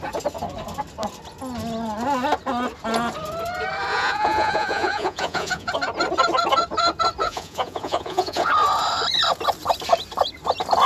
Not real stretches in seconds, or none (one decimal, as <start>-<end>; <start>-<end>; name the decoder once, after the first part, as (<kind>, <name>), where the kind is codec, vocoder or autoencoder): 3.9-5.7 (vocoder, Vocos); 7.2-8.5